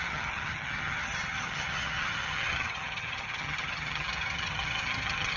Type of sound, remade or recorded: remade